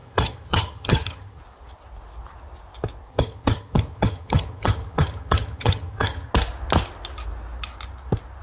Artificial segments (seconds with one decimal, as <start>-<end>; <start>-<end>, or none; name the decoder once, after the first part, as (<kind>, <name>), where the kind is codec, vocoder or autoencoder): 0.0-1.4 (vocoder, HiFi-GAN); 3.1-6.3